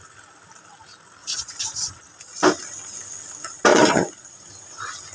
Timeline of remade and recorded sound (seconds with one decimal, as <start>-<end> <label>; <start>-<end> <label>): 0.0-1.2 recorded; 1.2-2.1 remade; 2.1-3.7 recorded; 3.7-4.5 remade; 4.5-5.1 recorded